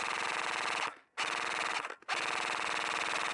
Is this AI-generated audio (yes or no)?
no